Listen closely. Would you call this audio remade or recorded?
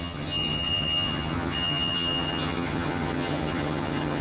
remade